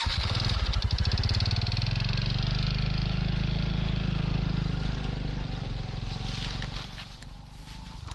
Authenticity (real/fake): real